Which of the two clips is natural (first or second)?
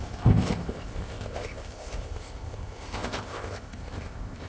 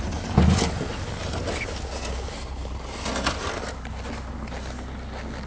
second